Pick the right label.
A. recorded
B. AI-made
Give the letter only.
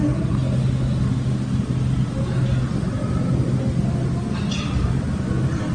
A